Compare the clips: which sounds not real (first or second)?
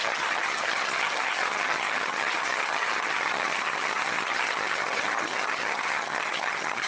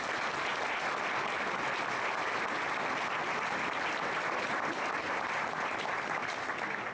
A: first